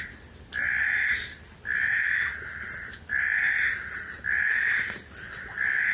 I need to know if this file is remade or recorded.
recorded